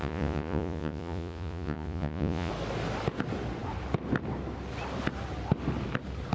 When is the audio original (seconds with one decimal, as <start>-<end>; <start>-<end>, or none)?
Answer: 2.5-6.3